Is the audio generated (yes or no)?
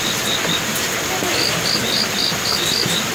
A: no